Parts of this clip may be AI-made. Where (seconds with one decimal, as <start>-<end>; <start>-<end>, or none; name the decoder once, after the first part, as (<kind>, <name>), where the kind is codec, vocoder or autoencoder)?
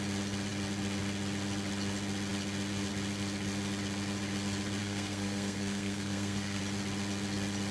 4.8-6.6 (codec, SNAC)